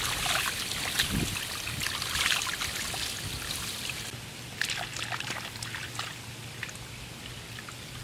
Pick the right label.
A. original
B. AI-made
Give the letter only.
A